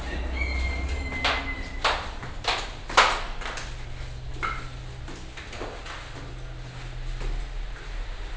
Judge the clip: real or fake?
real